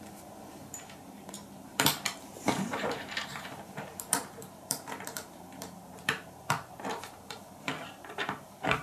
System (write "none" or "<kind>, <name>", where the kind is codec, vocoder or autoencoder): vocoder, BigVGAN v2